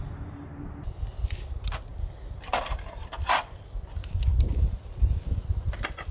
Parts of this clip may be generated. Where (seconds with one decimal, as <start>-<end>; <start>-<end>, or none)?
none